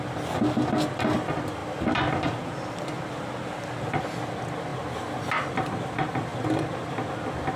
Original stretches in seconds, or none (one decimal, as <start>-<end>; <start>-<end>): 0.0-7.6